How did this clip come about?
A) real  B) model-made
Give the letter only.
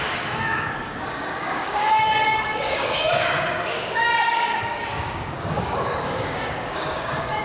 B